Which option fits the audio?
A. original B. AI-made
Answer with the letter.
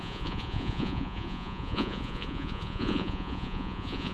B